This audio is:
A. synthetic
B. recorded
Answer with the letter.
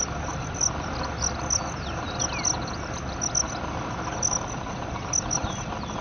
B